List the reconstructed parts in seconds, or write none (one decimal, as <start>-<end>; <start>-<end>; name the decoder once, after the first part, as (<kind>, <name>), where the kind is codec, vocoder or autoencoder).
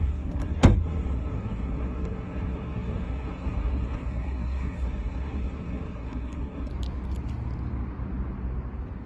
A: 0.0-6.7 (codec, SNAC)